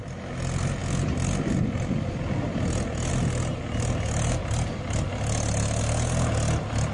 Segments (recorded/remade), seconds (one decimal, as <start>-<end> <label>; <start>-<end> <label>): 0.0-6.9 recorded